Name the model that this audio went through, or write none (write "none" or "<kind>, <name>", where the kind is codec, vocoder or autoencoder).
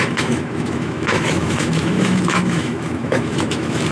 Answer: autoencoder, DAC-VAE